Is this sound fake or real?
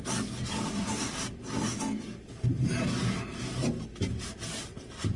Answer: real